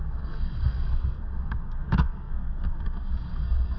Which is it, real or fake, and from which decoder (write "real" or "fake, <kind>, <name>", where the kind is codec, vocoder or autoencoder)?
fake, codec, SNAC